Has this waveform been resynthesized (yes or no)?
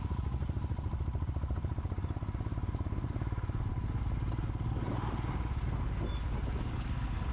no